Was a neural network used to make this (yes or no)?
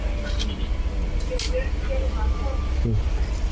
no